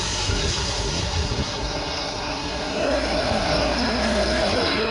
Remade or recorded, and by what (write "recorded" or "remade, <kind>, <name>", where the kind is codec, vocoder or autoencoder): remade, codec, SNAC